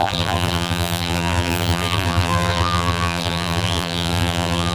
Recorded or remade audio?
remade